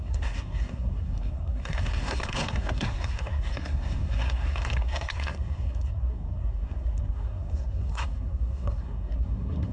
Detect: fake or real fake